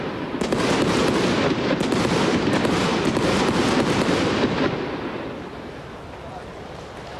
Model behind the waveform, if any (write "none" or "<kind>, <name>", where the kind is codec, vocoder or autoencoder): none